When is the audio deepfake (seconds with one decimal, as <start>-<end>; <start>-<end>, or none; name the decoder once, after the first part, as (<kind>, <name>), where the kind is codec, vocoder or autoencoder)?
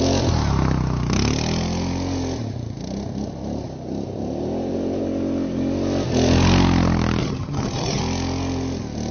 7.2-8.0 (vocoder, HiFi-GAN)